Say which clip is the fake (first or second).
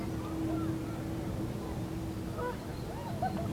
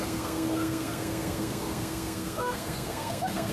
second